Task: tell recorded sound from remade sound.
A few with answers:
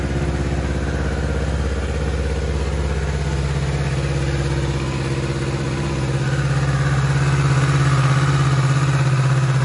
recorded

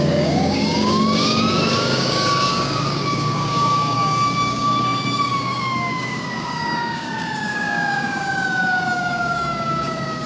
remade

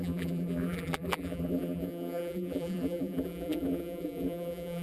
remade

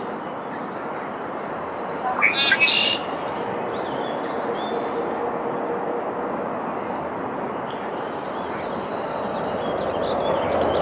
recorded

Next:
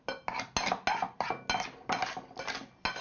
recorded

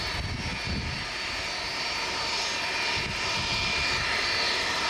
recorded